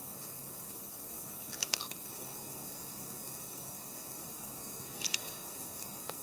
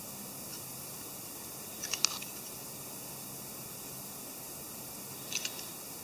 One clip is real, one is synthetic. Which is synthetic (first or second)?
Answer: first